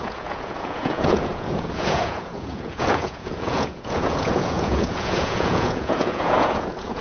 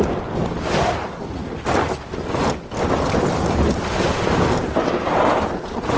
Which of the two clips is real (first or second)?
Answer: second